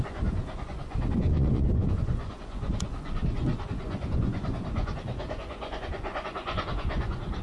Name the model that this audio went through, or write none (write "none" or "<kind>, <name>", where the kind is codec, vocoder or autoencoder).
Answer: vocoder, Vocos